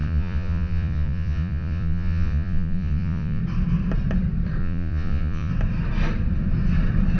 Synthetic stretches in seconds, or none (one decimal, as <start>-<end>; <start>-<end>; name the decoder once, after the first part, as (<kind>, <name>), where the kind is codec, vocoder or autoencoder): 0.0-3.4 (vocoder, Vocos); 4.6-5.5